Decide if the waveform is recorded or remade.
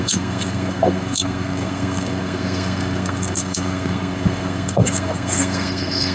remade